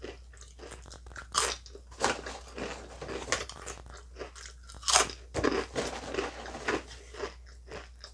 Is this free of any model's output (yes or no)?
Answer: yes